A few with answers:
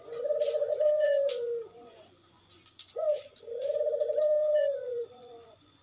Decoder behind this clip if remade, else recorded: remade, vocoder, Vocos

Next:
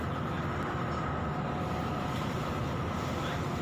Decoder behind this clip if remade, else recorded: recorded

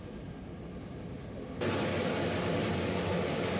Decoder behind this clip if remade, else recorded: recorded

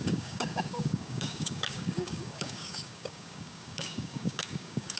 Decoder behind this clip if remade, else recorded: remade, codec, DAC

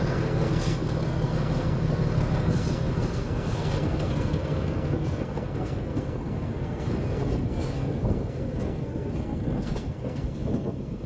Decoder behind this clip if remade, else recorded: remade, codec, SNAC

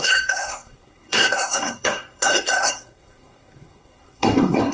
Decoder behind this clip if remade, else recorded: remade, codec, SNAC